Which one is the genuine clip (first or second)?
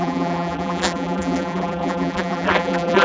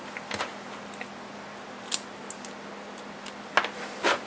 second